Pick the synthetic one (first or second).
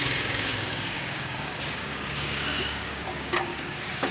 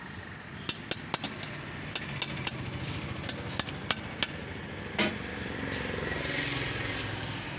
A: first